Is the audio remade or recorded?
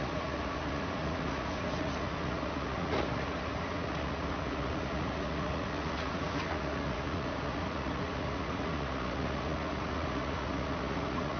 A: remade